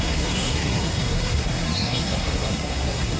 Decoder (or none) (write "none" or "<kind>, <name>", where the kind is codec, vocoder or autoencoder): codec, SNAC